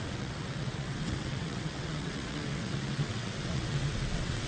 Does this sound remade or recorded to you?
remade